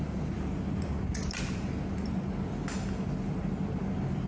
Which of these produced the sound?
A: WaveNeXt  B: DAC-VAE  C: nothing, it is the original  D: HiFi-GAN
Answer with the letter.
C